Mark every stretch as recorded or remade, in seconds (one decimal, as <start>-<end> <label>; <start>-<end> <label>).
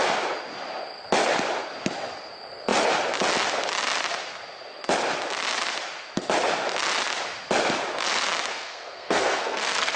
0.0-8.5 recorded; 8.5-10.0 remade